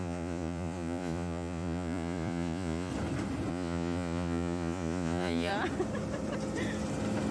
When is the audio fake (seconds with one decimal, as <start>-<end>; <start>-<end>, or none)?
0.0-2.9; 3.5-5.5